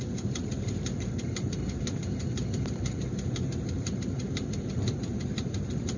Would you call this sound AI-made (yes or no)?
yes